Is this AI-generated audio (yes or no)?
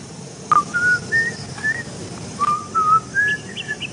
no